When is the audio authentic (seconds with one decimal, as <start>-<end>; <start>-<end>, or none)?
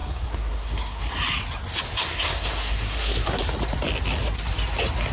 1.1-2.0; 3.4-5.1